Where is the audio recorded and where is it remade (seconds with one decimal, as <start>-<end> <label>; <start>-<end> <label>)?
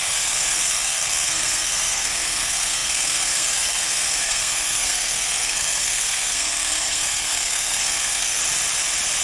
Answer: 0.0-8.4 remade; 8.4-9.2 recorded